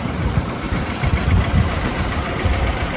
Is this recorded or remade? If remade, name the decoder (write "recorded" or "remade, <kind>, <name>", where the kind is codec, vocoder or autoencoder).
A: remade, vocoder, BigVGAN v2